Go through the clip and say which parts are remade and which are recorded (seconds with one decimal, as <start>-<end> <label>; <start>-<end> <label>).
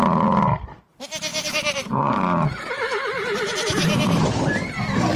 0.0-1.3 recorded; 1.3-4.4 remade; 4.4-5.2 recorded